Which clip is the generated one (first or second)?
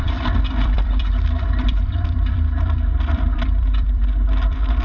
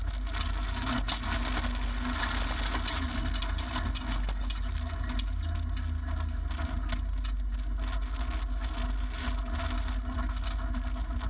first